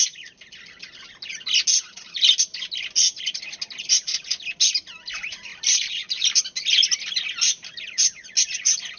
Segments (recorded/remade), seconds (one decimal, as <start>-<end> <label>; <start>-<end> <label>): 0.0-5.5 recorded; 5.5-6.4 remade; 6.4-9.0 recorded